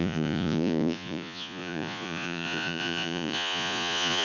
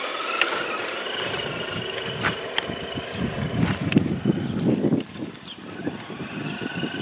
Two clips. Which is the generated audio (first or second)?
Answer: first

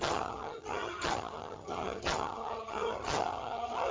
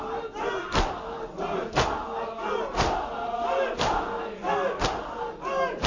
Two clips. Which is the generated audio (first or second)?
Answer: first